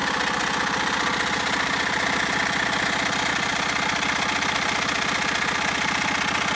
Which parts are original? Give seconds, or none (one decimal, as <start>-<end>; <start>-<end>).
0.0-6.5